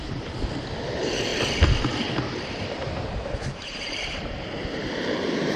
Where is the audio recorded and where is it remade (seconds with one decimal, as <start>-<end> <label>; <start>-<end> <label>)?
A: 0.0-1.3 remade; 1.3-2.9 recorded; 2.9-5.6 remade